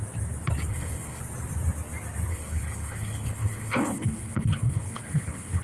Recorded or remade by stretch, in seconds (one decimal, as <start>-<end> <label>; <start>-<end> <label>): 0.0-0.7 recorded; 0.7-1.2 remade; 1.2-2.3 recorded; 2.3-5.6 remade